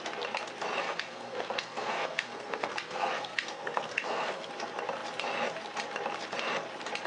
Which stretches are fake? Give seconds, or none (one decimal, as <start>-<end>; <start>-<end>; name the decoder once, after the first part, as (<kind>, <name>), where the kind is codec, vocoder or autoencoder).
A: 0.8-4.5 (codec, SNAC)